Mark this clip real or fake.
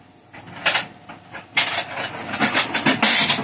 real